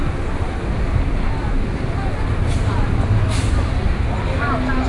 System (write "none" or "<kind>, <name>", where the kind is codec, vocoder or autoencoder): none